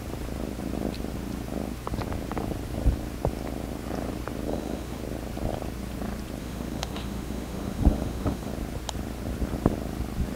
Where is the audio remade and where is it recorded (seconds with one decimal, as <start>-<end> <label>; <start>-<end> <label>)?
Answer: 0.0-4.5 recorded; 4.5-5.0 remade; 5.0-6.4 recorded; 6.4-8.5 remade; 8.5-10.4 recorded